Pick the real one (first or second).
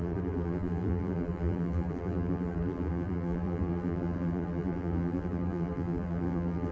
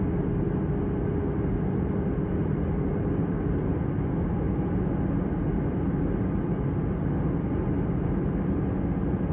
second